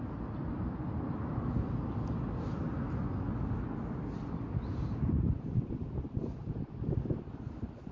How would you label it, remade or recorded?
recorded